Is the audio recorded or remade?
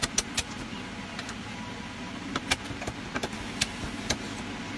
recorded